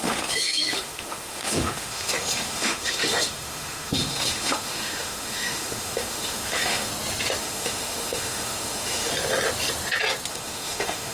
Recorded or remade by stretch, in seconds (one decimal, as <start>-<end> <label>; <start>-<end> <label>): 0.0-6.9 remade; 6.9-7.4 recorded; 7.4-9.1 remade; 9.1-10.3 recorded; 10.3-11.1 remade

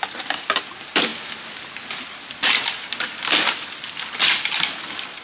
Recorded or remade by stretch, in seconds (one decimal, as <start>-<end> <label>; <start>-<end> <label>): 0.0-5.2 recorded

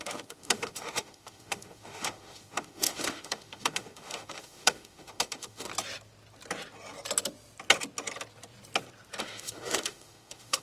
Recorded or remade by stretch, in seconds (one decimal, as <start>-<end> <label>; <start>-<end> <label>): 0.0-5.7 remade; 5.7-9.2 recorded; 9.2-10.6 remade

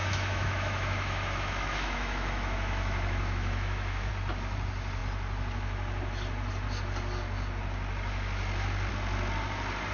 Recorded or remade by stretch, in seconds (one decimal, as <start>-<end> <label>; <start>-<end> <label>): 0.0-4.1 remade; 4.1-9.9 recorded

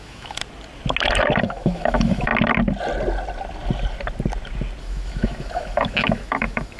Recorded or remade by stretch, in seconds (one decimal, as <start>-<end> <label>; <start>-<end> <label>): 0.0-0.4 remade; 0.4-1.4 recorded; 1.4-2.3 remade; 2.3-4.8 recorded; 4.8-6.8 remade